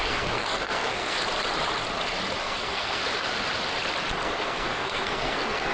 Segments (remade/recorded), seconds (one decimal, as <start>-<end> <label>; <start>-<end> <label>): 0.0-1.2 remade; 1.2-2.4 recorded; 2.4-3.0 remade; 3.0-4.2 recorded; 4.2-5.7 remade